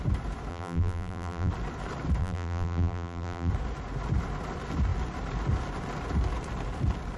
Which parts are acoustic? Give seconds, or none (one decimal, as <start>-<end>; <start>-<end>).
0.0-0.5; 1.5-2.2; 3.5-7.2

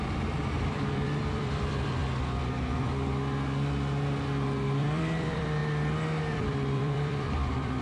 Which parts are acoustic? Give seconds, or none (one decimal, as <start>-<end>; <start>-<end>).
2.0-4.8; 5.6-6.2

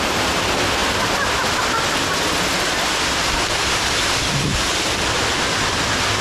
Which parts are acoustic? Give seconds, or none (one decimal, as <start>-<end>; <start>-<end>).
0.0-6.2

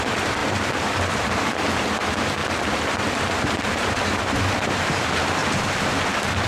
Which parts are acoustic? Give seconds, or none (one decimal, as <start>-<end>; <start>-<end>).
2.4-3.2